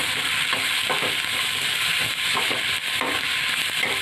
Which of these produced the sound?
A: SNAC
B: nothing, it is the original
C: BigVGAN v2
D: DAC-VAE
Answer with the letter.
B